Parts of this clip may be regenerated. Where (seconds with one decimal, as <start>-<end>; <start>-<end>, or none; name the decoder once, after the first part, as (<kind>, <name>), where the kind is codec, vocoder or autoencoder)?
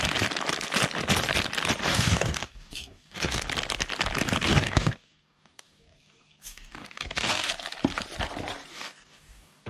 1.9-3.4 (codec, DAC); 4.5-7.5; 8.7-9.7